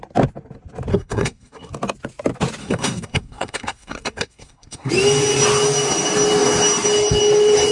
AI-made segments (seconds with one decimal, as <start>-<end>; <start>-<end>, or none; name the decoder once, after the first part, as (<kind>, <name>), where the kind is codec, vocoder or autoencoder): 0.9-1.7 (codec, SNAC); 2.6-4.9